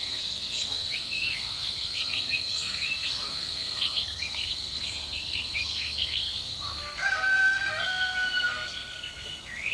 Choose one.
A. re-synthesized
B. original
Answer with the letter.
A